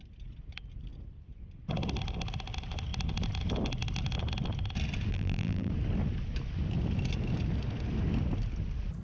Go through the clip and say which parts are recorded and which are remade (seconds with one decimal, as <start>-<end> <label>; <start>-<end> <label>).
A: 0.0-5.1 recorded; 5.1-5.7 remade; 5.7-9.0 recorded